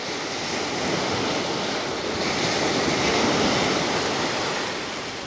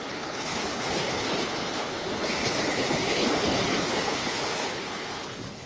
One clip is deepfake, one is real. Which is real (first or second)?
first